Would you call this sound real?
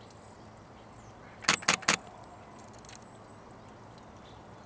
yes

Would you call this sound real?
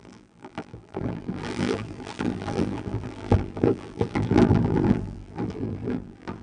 no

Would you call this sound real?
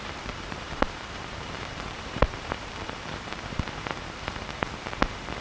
no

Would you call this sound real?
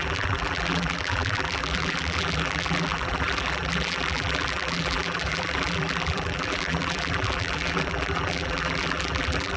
no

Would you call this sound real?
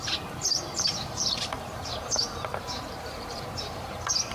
no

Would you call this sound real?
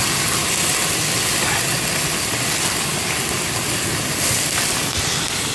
yes